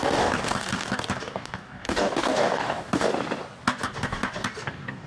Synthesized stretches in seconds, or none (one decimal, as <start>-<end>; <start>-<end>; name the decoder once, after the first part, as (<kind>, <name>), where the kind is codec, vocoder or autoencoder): 0.0-3.1 (codec, DAC); 3.7-5.1